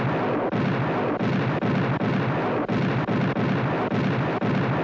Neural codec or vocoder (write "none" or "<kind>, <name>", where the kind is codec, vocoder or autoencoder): none